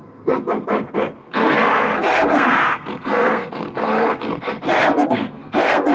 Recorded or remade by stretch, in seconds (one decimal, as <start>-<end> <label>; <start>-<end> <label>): 0.0-5.9 remade